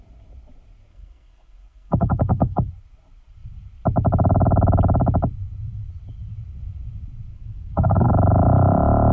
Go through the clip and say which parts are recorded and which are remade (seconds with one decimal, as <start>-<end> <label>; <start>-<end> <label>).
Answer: 0.0-0.9 recorded; 0.9-2.7 remade; 2.7-7.3 recorded; 7.3-8.1 remade; 8.1-9.1 recorded